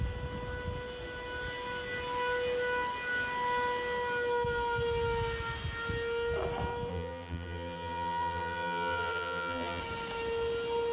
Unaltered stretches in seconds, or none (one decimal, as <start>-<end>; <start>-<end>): 0.0-6.9; 9.8-10.9